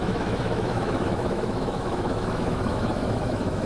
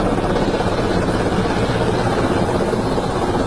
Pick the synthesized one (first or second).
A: first